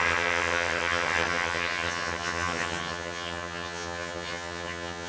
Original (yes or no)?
no